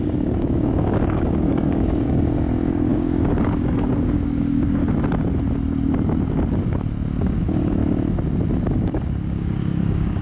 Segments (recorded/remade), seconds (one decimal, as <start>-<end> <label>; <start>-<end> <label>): 0.0-4.8 remade; 4.8-7.2 recorded; 7.2-7.8 remade; 7.8-8.7 recorded; 8.7-10.2 remade